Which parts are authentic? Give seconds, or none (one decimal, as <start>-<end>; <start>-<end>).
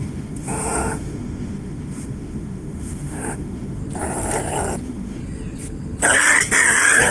3.8-4.8; 5.2-7.1